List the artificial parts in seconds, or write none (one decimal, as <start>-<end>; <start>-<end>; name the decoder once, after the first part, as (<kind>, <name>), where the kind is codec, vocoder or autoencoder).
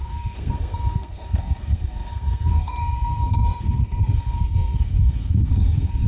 0.0-6.1 (codec, SNAC)